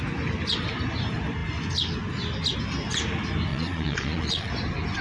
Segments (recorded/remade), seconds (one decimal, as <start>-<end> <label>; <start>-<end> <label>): 0.0-3.5 recorded; 3.5-4.5 remade; 4.5-5.0 recorded